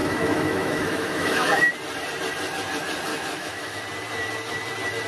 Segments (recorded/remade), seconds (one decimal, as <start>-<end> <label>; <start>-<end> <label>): 0.0-1.7 remade; 1.7-3.1 recorded; 3.1-3.8 remade; 3.8-5.1 recorded